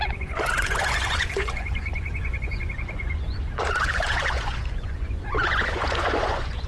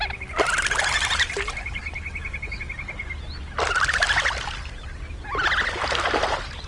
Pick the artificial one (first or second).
first